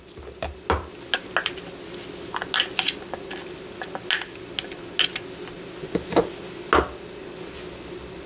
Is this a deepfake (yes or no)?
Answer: no